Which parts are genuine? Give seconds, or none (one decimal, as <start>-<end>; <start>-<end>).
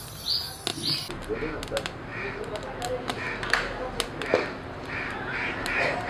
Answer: 0.0-6.1